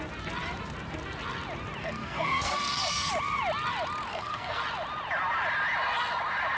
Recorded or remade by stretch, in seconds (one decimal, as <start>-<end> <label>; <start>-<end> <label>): 0.0-1.8 recorded; 1.8-3.1 remade; 3.1-4.1 recorded; 4.1-4.6 remade; 4.6-6.6 recorded